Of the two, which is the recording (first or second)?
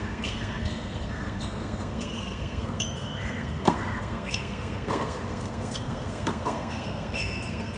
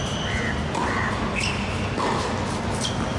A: second